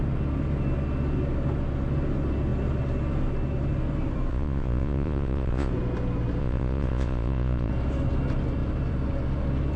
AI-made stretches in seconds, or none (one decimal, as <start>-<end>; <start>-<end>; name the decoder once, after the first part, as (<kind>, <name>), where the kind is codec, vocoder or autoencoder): 4.3-5.7 (vocoder, Vocos); 6.4-7.7